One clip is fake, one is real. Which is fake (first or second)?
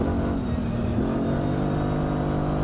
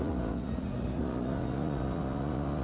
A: second